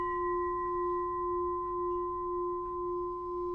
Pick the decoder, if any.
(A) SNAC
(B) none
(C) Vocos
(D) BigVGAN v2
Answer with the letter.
B